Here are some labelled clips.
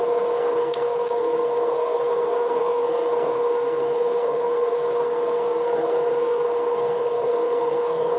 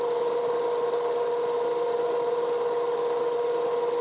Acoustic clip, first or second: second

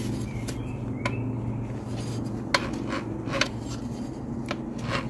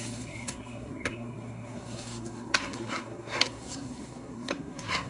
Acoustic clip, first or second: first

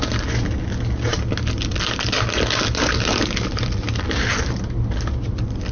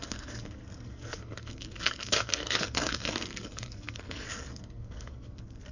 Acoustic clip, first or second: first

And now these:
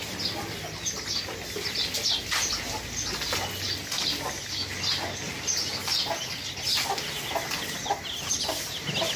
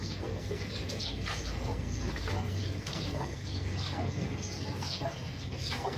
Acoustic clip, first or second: first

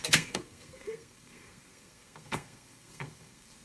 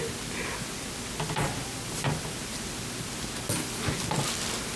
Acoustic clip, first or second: second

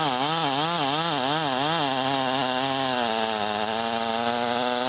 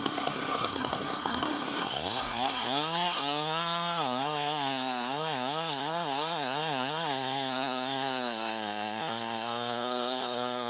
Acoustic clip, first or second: first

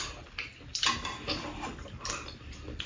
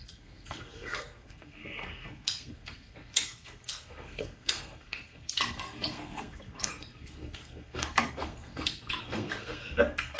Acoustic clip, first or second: first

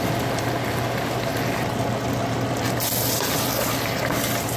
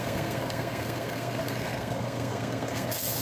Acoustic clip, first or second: first